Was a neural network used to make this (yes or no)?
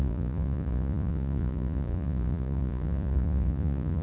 yes